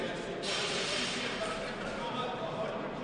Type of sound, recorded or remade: recorded